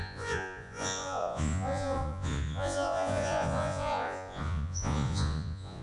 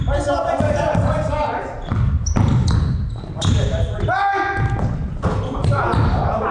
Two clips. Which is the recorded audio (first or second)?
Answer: second